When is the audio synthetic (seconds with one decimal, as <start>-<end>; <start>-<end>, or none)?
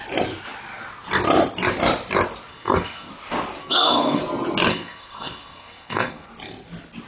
2.5-3.1; 3.6-4.2; 4.7-6.3